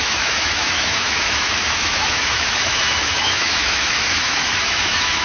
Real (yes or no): no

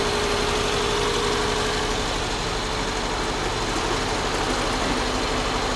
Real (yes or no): yes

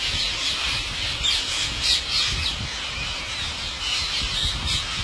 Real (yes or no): yes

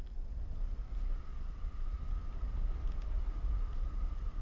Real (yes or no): yes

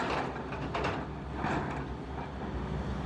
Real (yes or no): yes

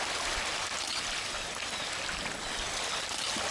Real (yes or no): yes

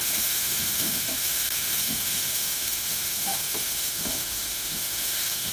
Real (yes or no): no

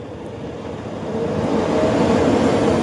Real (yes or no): yes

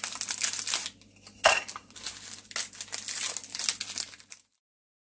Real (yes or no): yes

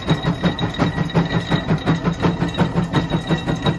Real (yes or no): yes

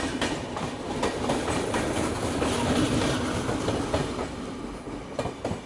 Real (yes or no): yes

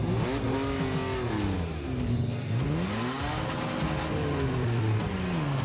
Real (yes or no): yes